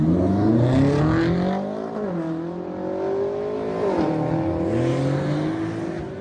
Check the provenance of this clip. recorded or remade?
recorded